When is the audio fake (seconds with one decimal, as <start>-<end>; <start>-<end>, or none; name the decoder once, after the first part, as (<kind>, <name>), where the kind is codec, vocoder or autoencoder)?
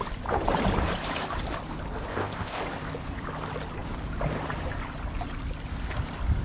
2.1-2.6 (codec, ZipCodec)